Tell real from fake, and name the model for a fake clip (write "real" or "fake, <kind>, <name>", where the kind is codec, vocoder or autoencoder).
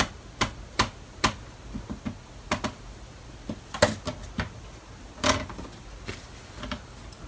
real